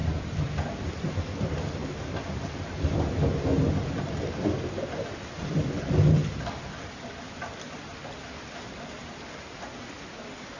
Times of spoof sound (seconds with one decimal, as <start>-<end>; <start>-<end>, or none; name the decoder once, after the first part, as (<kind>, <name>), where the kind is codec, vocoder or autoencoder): 0.0-1.8 (vocoder, BigVGAN v2); 4.0-10.6